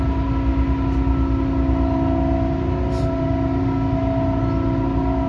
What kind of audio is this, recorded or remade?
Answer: recorded